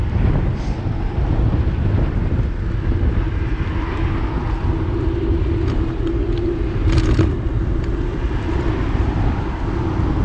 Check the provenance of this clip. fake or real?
real